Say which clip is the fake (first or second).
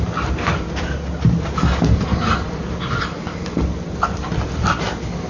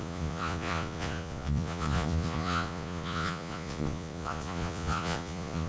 second